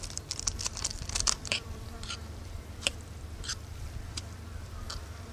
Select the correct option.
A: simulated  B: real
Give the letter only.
A